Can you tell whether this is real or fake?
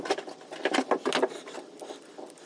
real